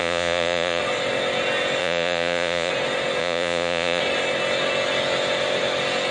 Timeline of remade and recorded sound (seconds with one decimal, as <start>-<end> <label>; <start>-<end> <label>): 0.0-0.8 remade; 0.8-1.8 recorded; 1.8-2.7 remade; 2.7-3.2 recorded; 3.2-4.0 remade; 4.0-6.1 recorded